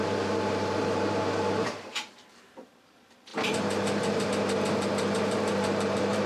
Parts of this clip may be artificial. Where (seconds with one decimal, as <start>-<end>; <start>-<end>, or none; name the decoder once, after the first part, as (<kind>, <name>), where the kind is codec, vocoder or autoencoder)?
0.0-6.3 (vocoder, BigVGAN v2)

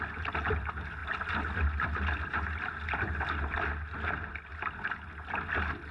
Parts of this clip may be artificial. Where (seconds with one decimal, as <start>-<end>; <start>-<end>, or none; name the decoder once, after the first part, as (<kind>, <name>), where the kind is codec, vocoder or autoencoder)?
none